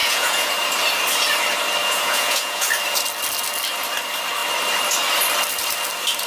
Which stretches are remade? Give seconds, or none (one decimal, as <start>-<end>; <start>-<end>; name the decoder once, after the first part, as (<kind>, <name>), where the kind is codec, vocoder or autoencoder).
0.0-0.5 (vocoder, Vocos); 1.8-2.7